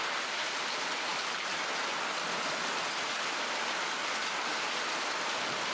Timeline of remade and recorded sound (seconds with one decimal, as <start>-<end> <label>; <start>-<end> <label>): 0.0-5.7 recorded